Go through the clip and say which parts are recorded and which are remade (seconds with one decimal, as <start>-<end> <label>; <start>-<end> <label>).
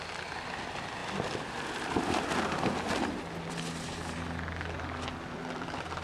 0.0-6.0 recorded